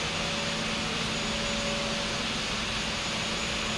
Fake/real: real